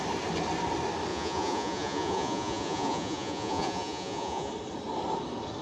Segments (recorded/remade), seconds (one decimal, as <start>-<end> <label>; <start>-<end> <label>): 0.0-1.1 recorded; 1.1-4.5 remade; 4.5-5.6 recorded